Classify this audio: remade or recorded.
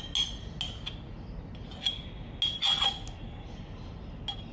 recorded